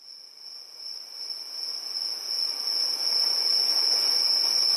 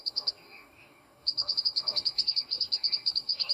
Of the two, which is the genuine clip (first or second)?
first